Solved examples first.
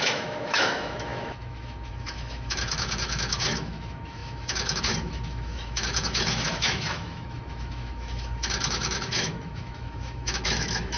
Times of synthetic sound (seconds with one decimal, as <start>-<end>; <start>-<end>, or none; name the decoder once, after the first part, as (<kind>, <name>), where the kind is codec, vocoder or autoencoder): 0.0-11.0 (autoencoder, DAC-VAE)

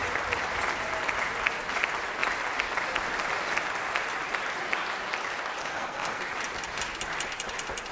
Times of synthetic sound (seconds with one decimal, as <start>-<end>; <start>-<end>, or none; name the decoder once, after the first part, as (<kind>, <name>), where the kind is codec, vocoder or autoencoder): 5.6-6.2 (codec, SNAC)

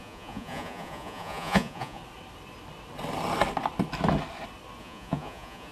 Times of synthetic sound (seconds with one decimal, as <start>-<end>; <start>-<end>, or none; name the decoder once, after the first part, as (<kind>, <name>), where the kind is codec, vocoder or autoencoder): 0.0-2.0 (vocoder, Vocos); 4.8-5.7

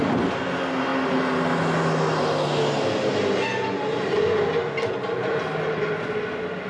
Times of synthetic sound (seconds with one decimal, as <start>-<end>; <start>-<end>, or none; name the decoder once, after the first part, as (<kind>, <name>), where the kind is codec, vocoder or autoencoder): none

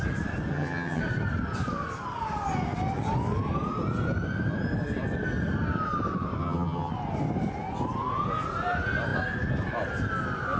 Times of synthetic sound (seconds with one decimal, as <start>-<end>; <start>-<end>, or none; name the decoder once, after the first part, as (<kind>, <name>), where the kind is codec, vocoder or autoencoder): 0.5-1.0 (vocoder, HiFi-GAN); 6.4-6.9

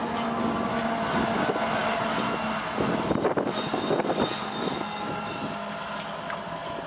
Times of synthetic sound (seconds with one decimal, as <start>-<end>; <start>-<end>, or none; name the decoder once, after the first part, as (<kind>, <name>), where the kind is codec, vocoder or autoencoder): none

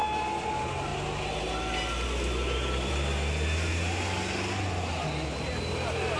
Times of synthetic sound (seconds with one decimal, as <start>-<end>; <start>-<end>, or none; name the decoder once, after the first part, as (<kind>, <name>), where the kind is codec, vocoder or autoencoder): none